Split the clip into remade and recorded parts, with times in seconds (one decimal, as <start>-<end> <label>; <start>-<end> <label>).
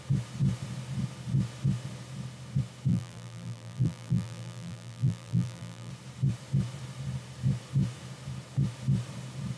0.0-2.9 recorded; 2.9-5.9 remade; 5.9-9.6 recorded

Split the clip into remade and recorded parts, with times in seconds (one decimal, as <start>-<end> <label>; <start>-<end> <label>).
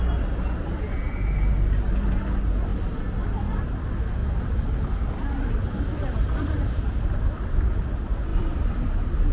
0.0-4.2 recorded; 4.2-7.7 remade; 7.7-8.3 recorded; 8.3-8.9 remade; 8.9-9.3 recorded